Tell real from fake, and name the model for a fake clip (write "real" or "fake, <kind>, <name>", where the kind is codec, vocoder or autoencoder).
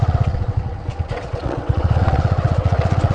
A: fake, vocoder, WaveNeXt